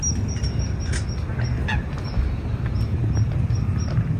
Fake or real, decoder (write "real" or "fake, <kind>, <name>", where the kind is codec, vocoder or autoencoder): real